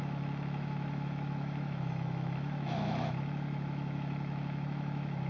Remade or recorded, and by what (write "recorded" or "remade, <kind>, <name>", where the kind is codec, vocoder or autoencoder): remade, autoencoder, DAC-VAE